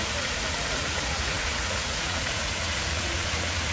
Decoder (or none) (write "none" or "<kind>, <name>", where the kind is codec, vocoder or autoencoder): vocoder, Vocos